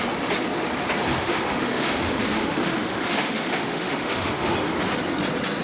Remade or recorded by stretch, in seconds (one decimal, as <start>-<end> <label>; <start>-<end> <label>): 0.0-1.1 recorded; 1.1-4.5 remade; 4.5-5.6 recorded